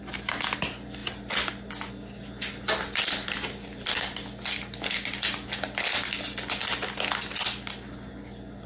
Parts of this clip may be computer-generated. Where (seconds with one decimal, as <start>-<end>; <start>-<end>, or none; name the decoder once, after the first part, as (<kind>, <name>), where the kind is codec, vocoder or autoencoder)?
none